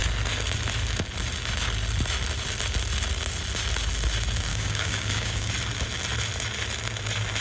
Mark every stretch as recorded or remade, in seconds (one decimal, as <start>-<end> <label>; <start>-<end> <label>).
0.0-4.5 recorded; 4.5-5.5 remade; 5.5-7.4 recorded